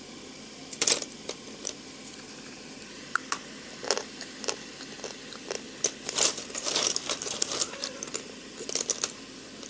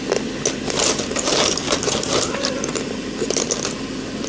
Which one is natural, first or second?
second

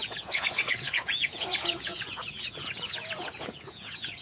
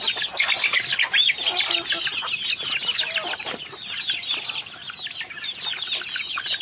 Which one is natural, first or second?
second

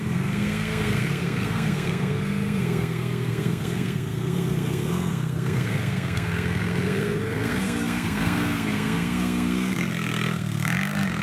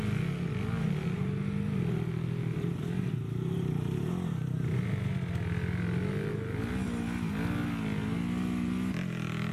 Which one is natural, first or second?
second